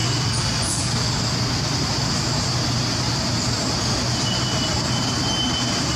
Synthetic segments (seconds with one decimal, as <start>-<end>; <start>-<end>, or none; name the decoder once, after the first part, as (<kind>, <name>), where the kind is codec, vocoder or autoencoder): 0.0-1.1 (vocoder, BigVGAN v2)